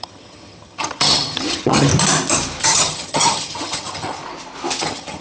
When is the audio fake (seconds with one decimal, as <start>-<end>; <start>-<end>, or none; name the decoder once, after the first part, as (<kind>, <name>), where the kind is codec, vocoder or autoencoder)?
0.0-1.9 (vocoder, HiFi-GAN); 2.6-4.2; 4.8-5.2